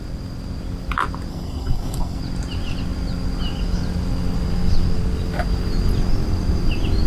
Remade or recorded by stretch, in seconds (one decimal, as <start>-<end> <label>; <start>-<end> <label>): 0.0-1.3 recorded; 1.3-2.2 remade; 2.2-7.1 recorded